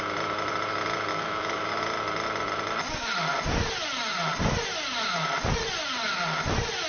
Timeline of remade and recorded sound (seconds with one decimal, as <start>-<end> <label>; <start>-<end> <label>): 0.0-1.1 recorded; 1.1-1.6 remade; 1.6-6.9 recorded